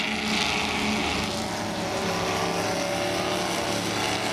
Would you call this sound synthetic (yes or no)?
no